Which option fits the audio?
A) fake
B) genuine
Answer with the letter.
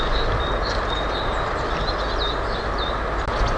B